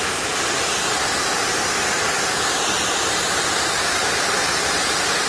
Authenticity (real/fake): real